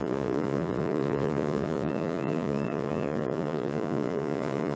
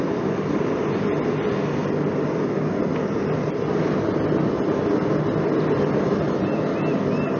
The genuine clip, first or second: second